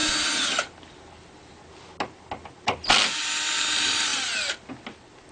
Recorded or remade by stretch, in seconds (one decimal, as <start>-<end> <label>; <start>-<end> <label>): 0.0-5.3 recorded